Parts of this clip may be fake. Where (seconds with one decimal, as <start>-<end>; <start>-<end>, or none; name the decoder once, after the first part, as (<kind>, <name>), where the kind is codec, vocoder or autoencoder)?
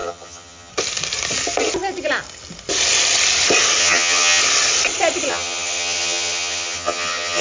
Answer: 0.0-0.7 (vocoder, HiFi-GAN); 3.8-4.4; 5.3-7.4